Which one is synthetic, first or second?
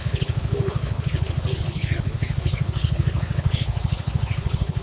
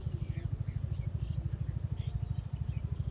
first